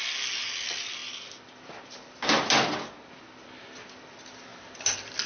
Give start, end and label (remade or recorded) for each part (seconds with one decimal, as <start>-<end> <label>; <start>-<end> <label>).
0.0-5.3 recorded